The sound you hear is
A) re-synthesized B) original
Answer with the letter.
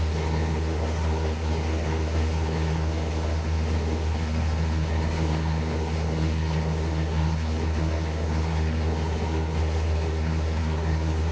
A